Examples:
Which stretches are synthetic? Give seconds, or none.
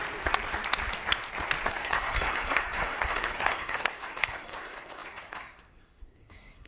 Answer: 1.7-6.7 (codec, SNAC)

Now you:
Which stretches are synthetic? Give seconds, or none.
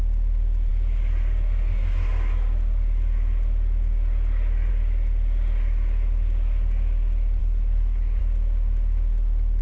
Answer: 7.4-8.2 (codec, HILCodec)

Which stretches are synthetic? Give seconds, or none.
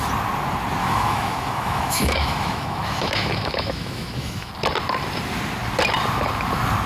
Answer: 0.8-4.5 (autoencoder, DAC-VAE)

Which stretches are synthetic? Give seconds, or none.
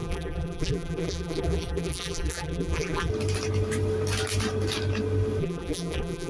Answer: 0.0-3.1 (vocoder, BigVGAN v2); 5.4-6.3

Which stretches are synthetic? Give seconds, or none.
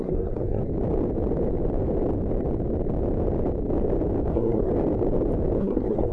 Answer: 0.0-0.6 (codec, SNAC); 4.3-4.7; 5.6-6.1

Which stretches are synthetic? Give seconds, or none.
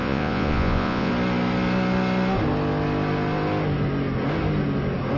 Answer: 0.0-1.1 (vocoder, Vocos)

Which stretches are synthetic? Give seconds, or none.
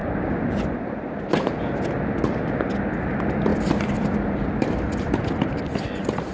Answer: 3.0-6.3 (vocoder, BigVGAN v2)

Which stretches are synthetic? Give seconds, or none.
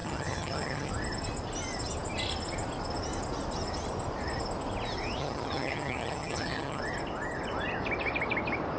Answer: 0.0-0.9 (vocoder, HiFi-GAN); 5.2-6.8